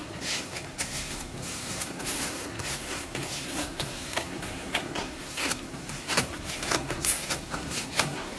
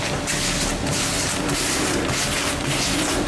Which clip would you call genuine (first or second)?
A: second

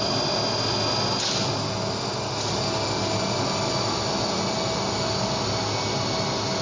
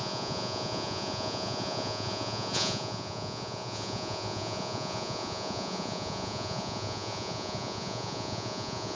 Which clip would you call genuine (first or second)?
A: first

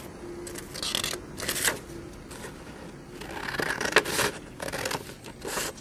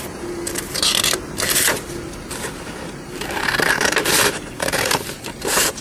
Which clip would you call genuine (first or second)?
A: first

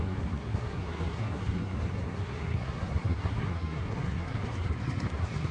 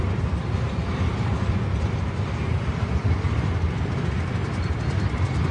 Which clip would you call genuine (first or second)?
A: second